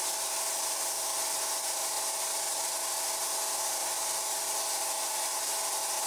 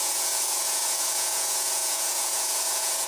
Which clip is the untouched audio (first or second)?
first